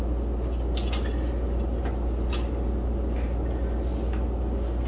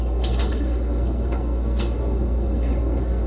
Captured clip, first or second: first